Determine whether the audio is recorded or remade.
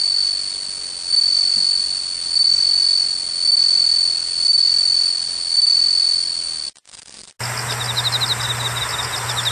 recorded